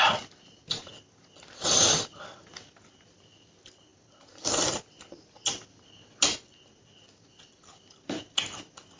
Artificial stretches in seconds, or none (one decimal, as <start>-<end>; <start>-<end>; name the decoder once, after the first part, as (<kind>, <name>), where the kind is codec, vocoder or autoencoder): none